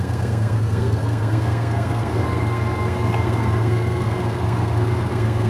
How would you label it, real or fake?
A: fake